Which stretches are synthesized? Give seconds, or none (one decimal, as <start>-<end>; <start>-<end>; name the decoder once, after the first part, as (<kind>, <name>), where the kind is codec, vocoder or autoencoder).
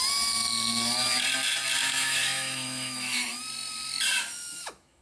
1.8-3.4 (autoencoder, DAC-VAE); 4.3-5.0